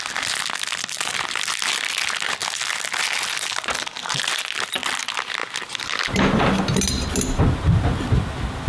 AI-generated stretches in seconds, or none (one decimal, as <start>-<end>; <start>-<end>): none